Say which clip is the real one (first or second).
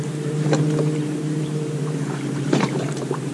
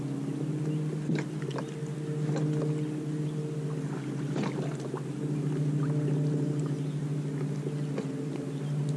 second